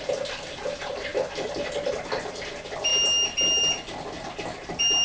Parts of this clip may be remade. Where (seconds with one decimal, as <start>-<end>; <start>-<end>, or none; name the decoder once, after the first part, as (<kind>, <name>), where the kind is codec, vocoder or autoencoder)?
none